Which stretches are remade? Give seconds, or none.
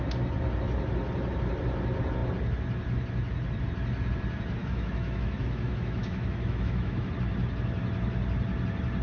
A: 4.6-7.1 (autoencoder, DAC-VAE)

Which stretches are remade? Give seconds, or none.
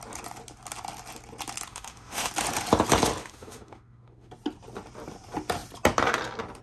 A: 1.7-2.3 (autoencoder, DAC-VAE); 3.2-4.3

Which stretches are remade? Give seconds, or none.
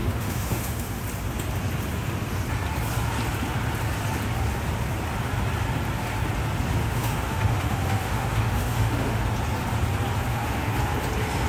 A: 0.0-1.0 (autoencoder, DAC-VAE); 6.8-9.2; 10.3-10.8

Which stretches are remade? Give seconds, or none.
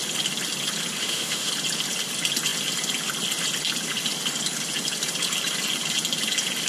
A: 1.0-1.5 (autoencoder, DAC-VAE)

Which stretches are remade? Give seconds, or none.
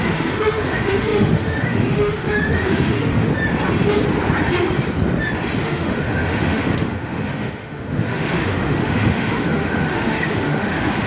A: 0.0-3.3 (autoencoder, DAC-VAE); 5.6-11.1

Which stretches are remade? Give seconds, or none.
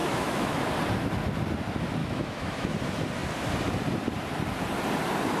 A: 0.0-0.6 (autoencoder, DAC-VAE); 2.0-2.7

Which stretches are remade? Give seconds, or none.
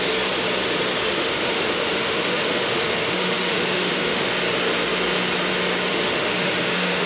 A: 1.0-4.3 (autoencoder, DAC-VAE); 5.9-7.1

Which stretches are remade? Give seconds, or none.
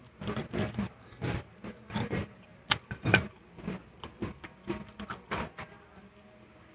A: none